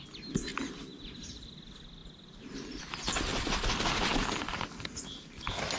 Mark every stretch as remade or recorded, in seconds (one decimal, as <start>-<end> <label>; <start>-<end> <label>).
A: 0.0-5.8 recorded